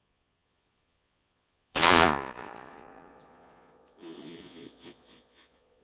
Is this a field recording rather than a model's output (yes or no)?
no